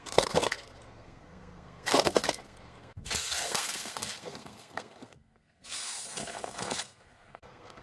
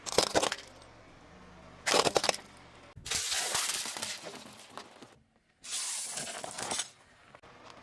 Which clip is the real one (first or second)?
second